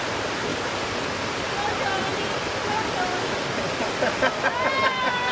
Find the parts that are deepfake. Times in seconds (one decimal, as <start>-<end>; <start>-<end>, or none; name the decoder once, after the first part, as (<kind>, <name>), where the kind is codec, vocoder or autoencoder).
none

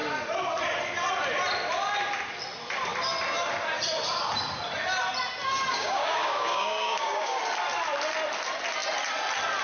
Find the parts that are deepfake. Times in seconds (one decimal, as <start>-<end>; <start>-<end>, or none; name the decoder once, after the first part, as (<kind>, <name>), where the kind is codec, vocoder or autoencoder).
5.7-7.4 (codec, DAC)

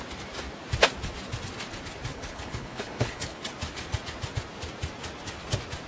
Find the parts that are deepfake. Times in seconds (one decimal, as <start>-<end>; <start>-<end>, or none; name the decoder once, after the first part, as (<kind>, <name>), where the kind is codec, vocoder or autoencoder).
2.1-3.5 (codec, HILCodec)

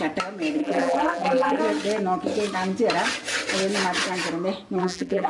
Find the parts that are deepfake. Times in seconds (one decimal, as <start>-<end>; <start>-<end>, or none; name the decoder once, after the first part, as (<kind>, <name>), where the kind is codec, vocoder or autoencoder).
0.6-1.6 (vocoder, BigVGAN v2); 4.8-5.3